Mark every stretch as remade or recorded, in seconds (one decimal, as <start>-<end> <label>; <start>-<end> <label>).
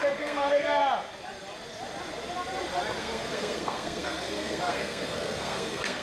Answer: 0.0-0.8 remade; 0.8-3.0 recorded; 3.0-6.0 remade